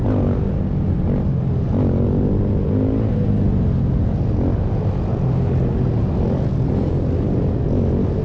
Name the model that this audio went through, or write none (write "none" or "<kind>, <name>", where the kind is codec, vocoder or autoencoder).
none